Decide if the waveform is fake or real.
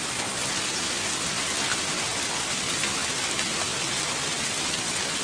fake